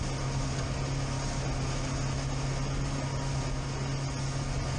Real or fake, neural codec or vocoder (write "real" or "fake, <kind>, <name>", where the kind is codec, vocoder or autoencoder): real